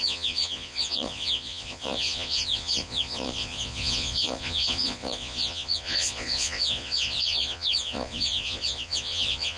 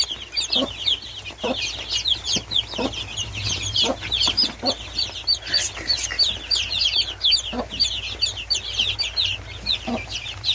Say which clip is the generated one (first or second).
first